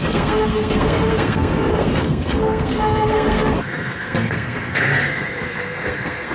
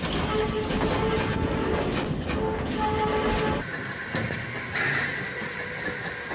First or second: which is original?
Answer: second